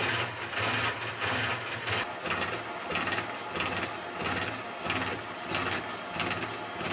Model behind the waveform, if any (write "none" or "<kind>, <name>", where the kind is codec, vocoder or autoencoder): none